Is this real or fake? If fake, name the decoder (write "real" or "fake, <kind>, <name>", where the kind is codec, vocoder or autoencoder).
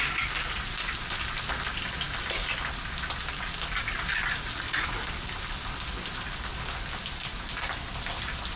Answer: real